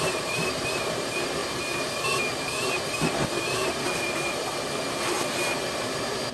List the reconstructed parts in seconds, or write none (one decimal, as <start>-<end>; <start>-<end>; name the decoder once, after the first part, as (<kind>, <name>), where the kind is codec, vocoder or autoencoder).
0.0-1.4 (vocoder, BigVGAN v2); 2.3-4.5; 5.3-6.3